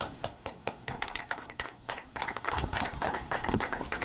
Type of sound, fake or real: fake